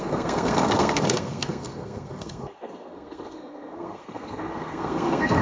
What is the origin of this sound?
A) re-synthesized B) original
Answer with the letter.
A